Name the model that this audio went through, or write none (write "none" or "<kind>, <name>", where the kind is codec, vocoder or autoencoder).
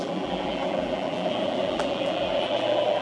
vocoder, BigVGAN v2